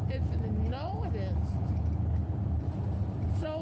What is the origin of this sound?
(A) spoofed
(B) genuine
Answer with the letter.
B